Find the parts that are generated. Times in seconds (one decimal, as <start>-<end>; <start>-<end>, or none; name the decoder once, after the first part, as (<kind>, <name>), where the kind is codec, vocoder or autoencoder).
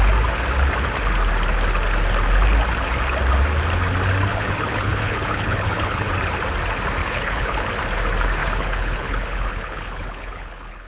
4.3-6.1 (codec, HILCodec); 7.0-7.7; 8.4-10.9